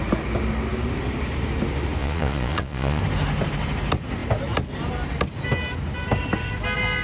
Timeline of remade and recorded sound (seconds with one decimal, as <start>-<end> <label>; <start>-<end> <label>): 0.0-2.0 recorded; 2.0-3.0 remade; 3.0-7.0 recorded